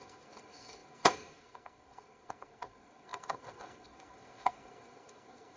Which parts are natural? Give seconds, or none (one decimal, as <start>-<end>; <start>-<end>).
none